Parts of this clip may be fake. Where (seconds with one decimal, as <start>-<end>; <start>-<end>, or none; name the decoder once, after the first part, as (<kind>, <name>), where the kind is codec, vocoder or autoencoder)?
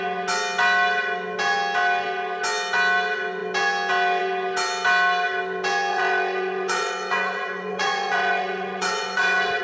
5.9-9.6 (vocoder, Vocos)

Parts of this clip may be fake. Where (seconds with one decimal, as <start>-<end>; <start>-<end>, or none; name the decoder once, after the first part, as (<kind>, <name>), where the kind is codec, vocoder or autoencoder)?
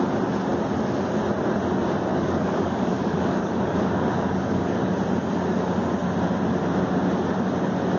2.1-4.9 (codec, DAC)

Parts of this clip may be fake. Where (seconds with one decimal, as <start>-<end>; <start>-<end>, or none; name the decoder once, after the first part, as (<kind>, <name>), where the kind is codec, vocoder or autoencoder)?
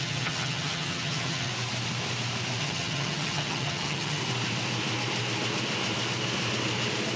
0.0-1.5 (vocoder, HiFi-GAN); 2.6-4.2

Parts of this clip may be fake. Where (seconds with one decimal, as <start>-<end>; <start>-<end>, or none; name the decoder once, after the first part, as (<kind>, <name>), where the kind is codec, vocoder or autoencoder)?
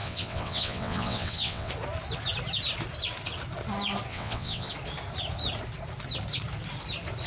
0.0-1.7 (vocoder, WaveNeXt); 4.1-4.7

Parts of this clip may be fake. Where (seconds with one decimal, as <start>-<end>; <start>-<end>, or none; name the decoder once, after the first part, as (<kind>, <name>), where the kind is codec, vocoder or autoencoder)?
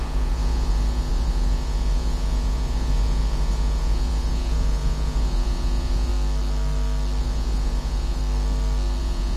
0.0-6.1 (vocoder, Vocos); 7.2-8.2; 9.0-9.4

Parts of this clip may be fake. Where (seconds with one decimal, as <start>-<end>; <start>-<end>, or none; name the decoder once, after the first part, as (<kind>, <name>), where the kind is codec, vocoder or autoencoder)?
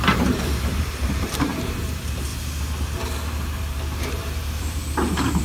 0.0-2.3 (vocoder, BigVGAN v2); 3.6-4.8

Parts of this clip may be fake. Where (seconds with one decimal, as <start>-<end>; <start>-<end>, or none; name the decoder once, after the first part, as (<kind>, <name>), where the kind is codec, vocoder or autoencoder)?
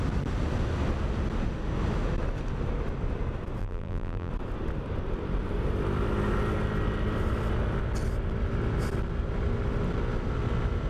3.6-4.3 (vocoder, BigVGAN v2)